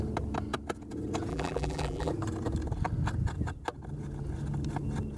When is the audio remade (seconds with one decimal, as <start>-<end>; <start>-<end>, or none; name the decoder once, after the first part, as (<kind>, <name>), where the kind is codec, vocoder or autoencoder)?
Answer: 1.3-2.1 (vocoder, BigVGAN v2)